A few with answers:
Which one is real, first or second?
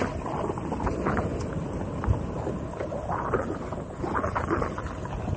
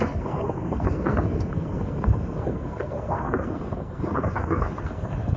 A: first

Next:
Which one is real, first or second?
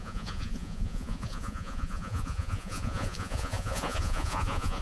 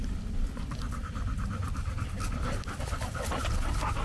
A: second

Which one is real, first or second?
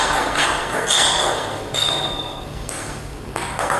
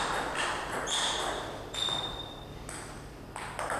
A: second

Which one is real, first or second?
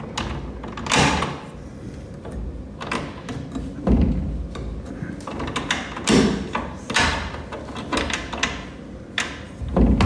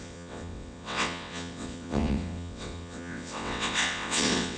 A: first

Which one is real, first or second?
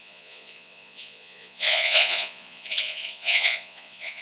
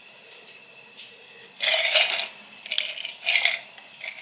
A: second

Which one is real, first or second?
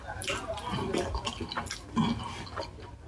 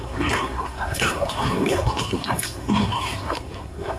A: first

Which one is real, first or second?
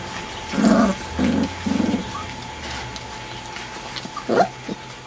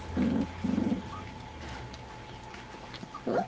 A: first